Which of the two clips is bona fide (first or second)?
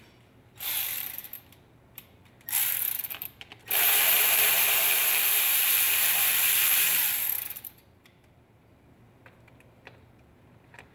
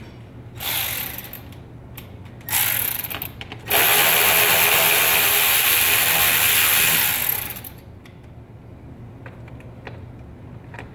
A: second